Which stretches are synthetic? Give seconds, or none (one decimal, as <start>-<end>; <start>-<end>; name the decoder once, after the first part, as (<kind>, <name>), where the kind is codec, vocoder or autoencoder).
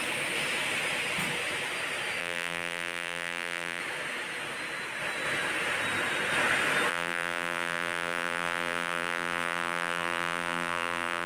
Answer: 2.2-3.8 (vocoder, BigVGAN v2); 6.9-11.3